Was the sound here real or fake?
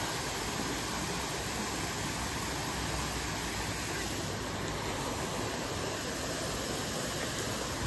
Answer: real